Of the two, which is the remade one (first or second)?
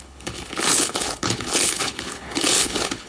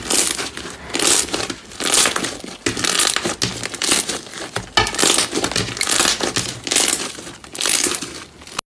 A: first